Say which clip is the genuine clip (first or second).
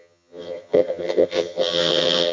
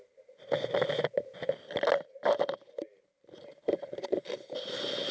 second